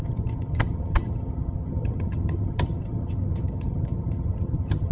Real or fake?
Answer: fake